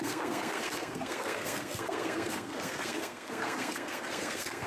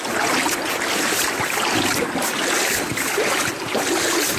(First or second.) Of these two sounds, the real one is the second